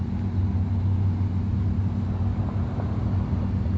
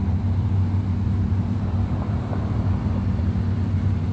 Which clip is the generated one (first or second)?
second